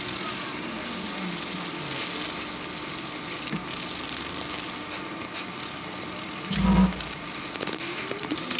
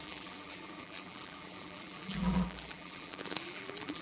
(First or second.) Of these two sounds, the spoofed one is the second